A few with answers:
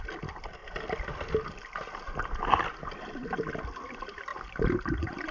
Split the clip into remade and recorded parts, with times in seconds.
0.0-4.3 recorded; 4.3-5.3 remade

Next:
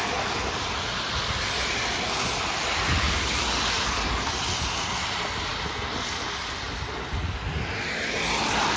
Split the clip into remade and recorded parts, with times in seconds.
0.0-8.8 recorded

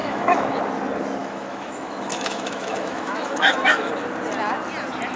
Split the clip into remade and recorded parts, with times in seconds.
0.0-0.6 remade; 0.6-1.2 recorded; 1.2-3.9 remade; 3.9-5.2 recorded

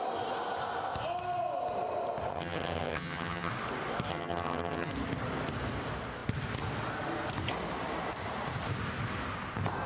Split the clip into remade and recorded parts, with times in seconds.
0.0-2.3 recorded; 2.3-3.5 remade; 3.5-4.1 recorded; 4.1-4.9 remade; 4.9-9.9 recorded